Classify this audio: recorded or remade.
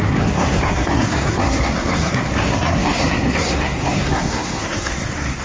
remade